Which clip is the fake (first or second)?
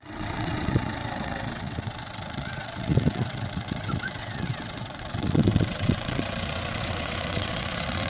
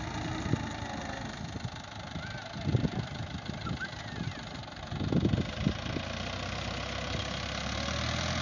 first